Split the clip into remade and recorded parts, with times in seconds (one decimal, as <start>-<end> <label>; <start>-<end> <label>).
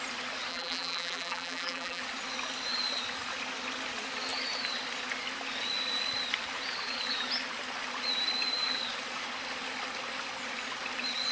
0.0-0.5 recorded; 0.5-2.0 remade; 2.0-11.3 recorded